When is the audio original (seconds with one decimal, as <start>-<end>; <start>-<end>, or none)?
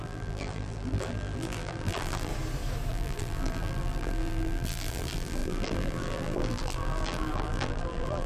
2.3-2.9